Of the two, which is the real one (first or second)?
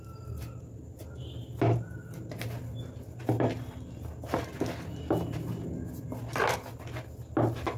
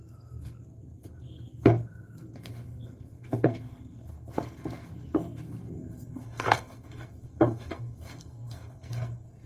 first